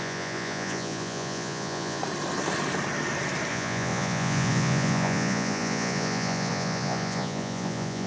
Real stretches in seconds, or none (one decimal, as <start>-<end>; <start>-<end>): 2.0-3.5